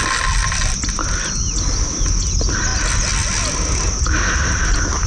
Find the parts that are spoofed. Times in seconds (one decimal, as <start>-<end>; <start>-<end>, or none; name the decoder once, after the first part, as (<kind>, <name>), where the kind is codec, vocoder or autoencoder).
none